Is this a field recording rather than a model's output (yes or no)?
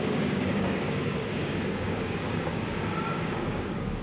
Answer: no